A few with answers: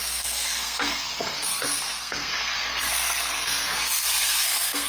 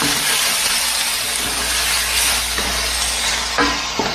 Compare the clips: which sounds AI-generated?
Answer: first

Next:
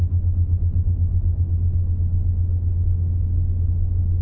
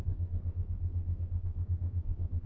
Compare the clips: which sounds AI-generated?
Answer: second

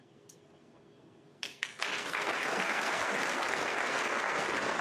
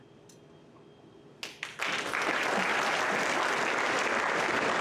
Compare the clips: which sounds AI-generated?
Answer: first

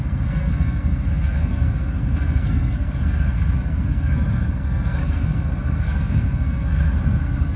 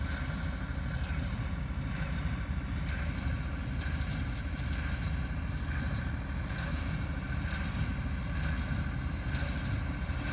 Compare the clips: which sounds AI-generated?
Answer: first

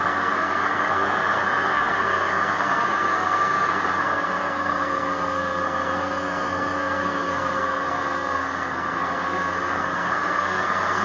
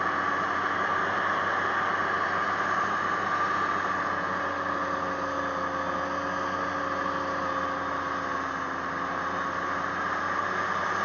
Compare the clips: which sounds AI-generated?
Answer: first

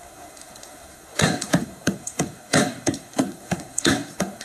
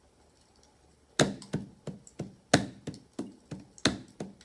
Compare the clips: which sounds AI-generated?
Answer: first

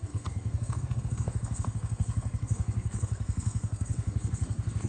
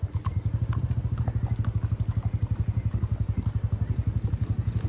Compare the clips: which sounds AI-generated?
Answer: first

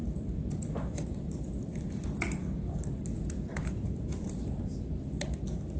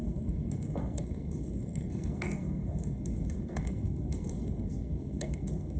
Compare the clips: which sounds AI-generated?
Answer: second